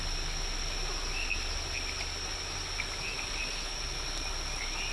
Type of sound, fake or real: real